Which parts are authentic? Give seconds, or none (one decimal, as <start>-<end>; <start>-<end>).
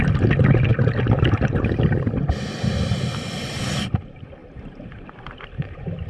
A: 0.0-4.4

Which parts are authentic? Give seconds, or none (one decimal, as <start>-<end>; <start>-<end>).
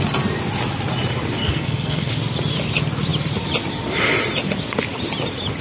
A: 0.0-1.4; 2.1-5.6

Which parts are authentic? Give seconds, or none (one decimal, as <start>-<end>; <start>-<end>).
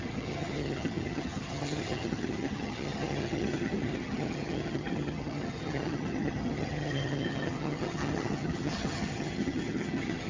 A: none